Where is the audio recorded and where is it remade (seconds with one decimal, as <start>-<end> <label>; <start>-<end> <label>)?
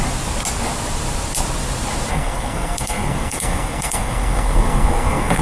0.0-2.1 recorded; 2.1-5.4 remade